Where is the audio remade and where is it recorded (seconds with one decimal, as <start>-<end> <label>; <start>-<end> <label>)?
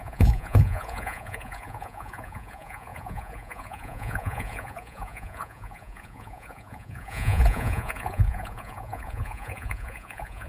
0.0-10.5 remade